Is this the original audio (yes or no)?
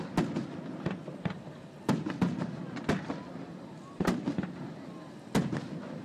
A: yes